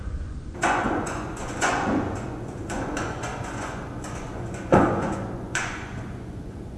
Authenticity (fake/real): fake